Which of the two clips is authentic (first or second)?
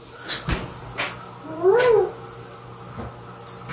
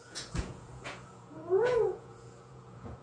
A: first